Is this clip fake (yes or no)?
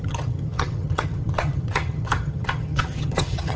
yes